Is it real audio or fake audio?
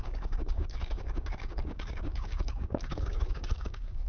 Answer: fake